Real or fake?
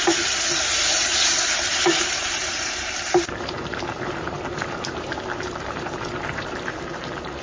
fake